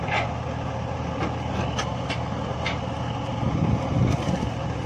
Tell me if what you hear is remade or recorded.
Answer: recorded